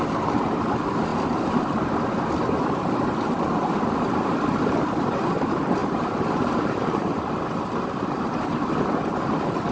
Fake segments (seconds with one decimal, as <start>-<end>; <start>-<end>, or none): 5.8-7.2